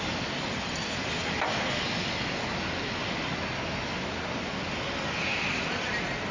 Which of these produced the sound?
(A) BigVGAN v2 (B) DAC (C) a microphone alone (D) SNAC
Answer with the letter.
C